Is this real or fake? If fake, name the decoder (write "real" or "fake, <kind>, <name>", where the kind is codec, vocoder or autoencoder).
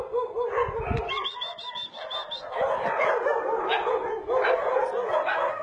real